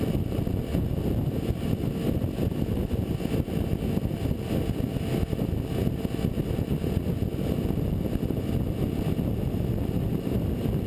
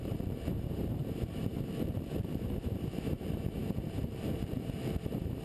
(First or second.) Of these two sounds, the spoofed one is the second